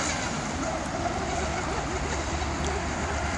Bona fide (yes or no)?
yes